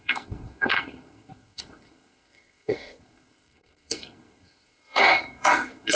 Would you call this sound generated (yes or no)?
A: yes